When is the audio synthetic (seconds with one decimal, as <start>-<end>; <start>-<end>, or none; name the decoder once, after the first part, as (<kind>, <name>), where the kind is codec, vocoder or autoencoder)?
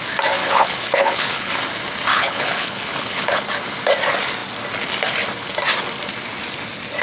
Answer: 0.4-1.5 (codec, HILCodec); 2.1-3.4